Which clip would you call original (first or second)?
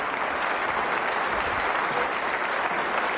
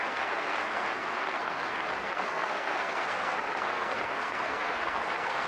first